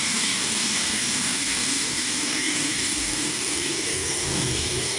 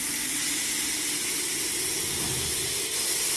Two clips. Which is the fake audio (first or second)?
first